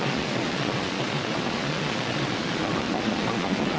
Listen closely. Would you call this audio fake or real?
fake